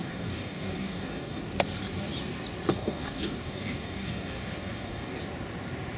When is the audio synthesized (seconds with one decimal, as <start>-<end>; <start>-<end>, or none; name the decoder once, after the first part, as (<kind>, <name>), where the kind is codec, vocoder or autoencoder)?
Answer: 0.0-1.4 (codec, DAC); 2.7-5.2